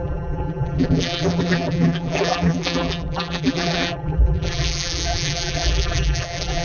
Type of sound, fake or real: fake